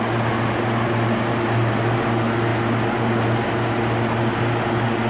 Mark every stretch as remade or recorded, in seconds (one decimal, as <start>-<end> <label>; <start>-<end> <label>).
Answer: 0.0-5.1 recorded

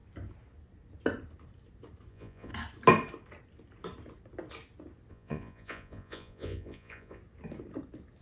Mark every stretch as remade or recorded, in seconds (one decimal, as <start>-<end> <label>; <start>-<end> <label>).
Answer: 0.0-2.1 recorded; 2.1-2.5 remade; 2.5-5.1 recorded; 5.1-7.2 remade; 7.2-8.2 recorded

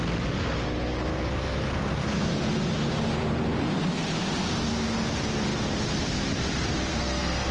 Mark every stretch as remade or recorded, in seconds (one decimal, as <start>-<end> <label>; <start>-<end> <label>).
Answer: 0.0-6.9 recorded; 6.9-7.5 remade

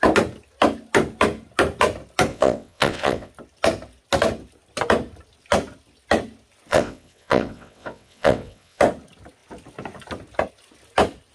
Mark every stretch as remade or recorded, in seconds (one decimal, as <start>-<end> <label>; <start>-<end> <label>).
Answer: 0.0-2.3 recorded; 2.3-3.3 remade; 3.3-6.7 recorded; 6.7-8.8 remade; 8.8-11.3 recorded

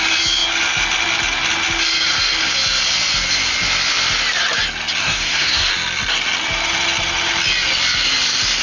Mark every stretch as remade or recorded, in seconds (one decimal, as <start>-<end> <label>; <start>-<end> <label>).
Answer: 0.0-5.0 recorded; 5.0-5.7 remade; 5.7-8.6 recorded

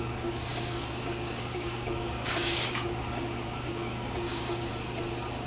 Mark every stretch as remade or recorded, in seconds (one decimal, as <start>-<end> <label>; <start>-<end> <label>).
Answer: 0.0-4.7 remade; 4.7-5.5 recorded

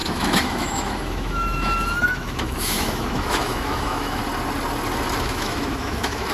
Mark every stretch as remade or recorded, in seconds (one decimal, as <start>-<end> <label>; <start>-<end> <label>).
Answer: 0.0-4.2 remade; 4.2-5.2 recorded; 5.2-6.3 remade

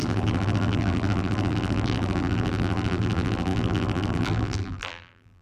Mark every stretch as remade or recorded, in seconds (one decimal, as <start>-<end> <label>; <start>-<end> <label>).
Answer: 0.0-5.4 remade